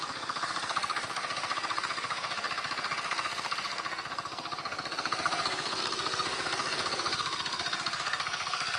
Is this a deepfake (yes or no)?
yes